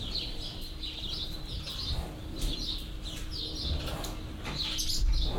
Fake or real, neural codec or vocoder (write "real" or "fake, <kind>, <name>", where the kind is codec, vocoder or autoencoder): real